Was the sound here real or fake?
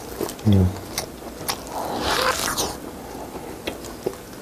real